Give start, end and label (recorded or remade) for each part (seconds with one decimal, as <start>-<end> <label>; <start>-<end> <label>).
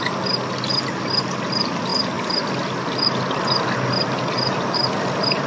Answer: 0.0-5.5 recorded